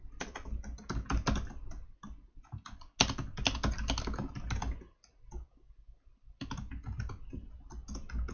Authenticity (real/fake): real